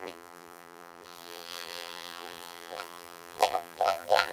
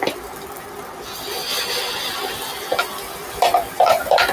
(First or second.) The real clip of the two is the second